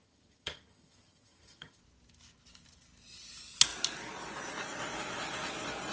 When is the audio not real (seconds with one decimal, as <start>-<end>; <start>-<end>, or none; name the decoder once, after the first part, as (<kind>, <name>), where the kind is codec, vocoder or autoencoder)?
0.0-1.8 (vocoder, HiFi-GAN)